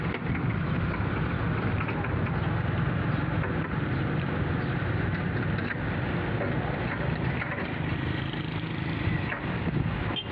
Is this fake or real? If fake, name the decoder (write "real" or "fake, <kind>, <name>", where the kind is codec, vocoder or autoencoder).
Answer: real